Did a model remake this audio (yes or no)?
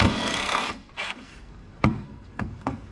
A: yes